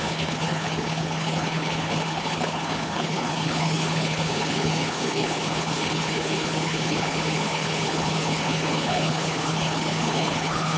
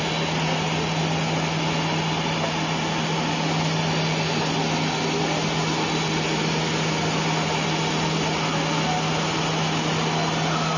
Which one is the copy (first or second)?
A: first